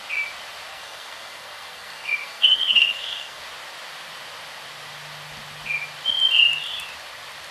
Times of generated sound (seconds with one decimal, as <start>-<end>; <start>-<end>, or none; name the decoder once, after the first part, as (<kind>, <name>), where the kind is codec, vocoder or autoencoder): 0.7-3.4 (codec, SNAC)